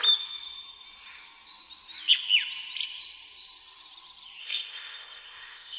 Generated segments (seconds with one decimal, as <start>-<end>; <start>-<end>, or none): 4.4-5.8